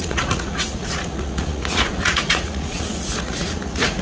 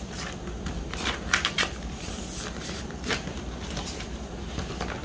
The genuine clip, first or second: second